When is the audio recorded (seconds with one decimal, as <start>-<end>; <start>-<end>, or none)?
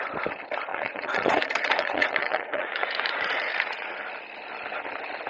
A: 0.0-0.7; 3.9-5.3